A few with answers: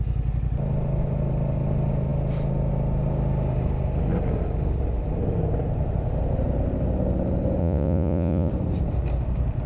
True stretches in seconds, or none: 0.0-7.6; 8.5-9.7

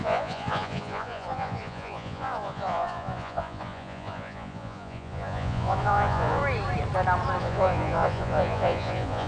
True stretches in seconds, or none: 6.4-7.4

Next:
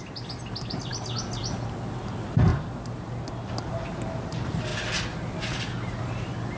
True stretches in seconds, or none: 0.0-6.6

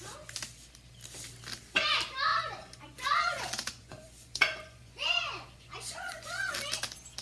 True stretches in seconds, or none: 0.0-2.3; 6.5-7.2